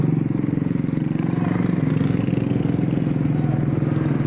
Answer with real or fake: real